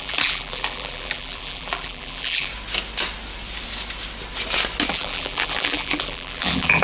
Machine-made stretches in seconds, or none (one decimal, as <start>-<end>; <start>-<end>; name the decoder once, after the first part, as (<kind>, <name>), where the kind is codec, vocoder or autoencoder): 0.0-2.5 (vocoder, BigVGAN v2); 4.9-6.8